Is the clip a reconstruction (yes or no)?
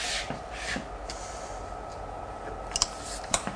no